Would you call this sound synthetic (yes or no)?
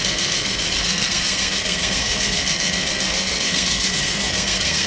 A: yes